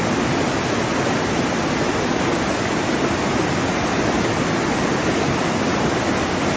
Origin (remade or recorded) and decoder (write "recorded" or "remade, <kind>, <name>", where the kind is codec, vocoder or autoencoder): recorded